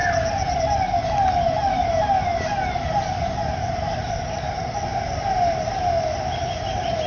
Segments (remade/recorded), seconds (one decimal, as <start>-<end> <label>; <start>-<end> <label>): 0.0-7.1 recorded